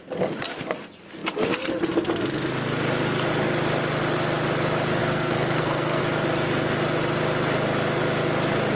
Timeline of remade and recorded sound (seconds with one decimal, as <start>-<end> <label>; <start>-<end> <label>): 0.0-5.0 recorded; 5.0-6.0 remade; 6.0-8.8 recorded